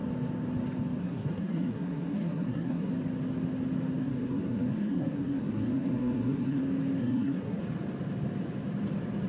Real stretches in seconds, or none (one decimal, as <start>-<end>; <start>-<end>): 0.0-1.0; 2.9-4.0; 6.6-7.0; 7.6-9.3